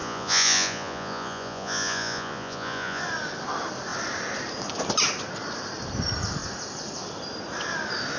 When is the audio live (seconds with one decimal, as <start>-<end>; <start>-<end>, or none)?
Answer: 3.0-8.2